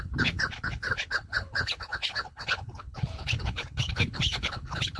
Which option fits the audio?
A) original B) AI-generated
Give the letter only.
B